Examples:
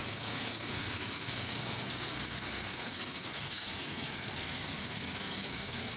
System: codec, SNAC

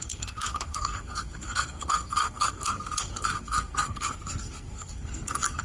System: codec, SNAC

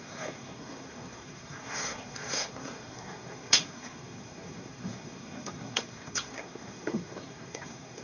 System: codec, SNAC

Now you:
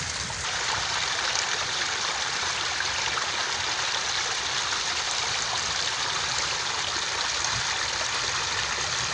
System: none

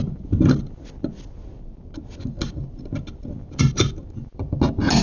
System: none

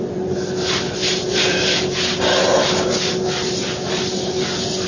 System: none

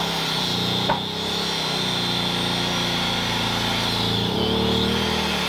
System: none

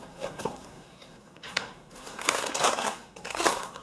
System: codec, SNAC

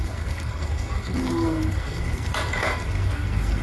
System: codec, SNAC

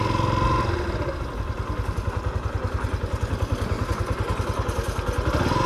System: none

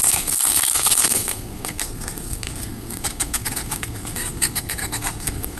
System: codec, SNAC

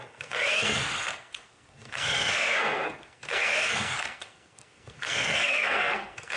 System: codec, SNAC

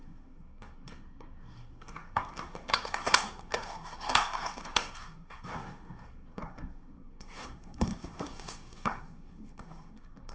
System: codec, SNAC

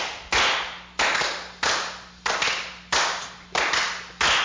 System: none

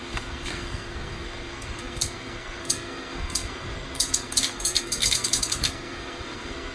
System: codec, SNAC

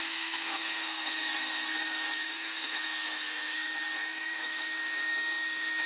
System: codec, SNAC